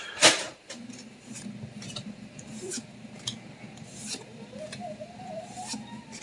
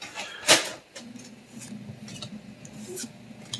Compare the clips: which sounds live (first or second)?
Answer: second